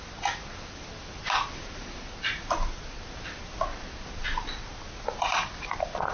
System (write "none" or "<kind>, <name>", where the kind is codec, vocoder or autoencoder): none